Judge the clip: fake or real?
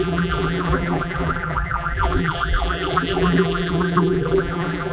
fake